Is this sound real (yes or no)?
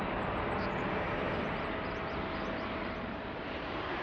yes